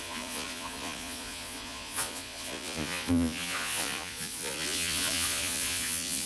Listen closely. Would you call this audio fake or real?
fake